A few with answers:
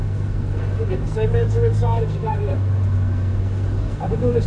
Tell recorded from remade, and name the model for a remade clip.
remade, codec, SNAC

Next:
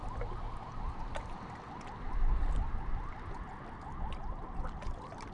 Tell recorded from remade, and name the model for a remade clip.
recorded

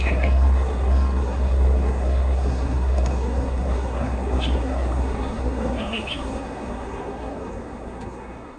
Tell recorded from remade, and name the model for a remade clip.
remade, codec, SNAC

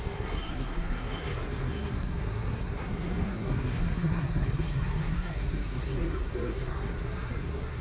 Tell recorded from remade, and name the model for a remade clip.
remade, codec, SNAC